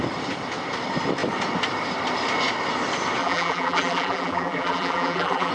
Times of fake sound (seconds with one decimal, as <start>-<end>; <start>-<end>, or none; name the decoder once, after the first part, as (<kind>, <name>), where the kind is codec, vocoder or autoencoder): 3.2-5.5 (vocoder, BigVGAN v2)